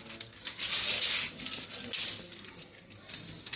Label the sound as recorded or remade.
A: recorded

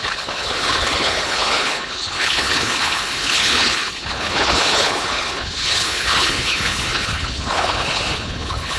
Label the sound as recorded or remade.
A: remade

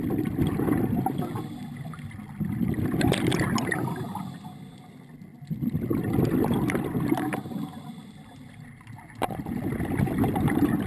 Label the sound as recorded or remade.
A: recorded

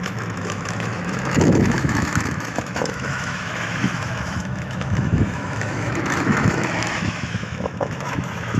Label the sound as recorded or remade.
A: remade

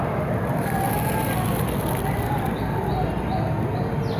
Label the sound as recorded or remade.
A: recorded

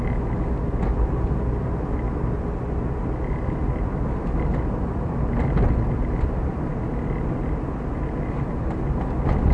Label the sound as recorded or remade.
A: recorded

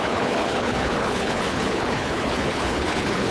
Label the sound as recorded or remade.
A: remade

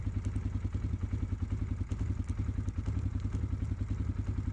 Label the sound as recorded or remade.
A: recorded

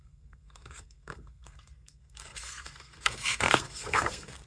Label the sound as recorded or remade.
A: remade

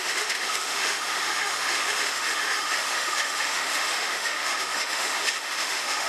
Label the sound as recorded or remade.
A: remade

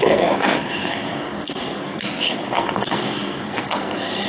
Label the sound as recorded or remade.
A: remade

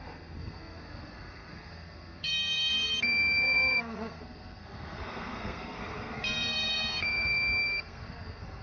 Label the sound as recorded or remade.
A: remade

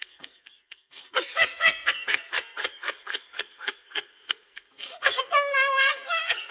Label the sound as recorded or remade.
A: remade